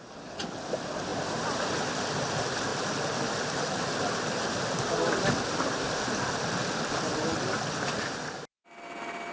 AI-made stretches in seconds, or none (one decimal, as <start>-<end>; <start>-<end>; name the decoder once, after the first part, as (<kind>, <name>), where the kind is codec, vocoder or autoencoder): none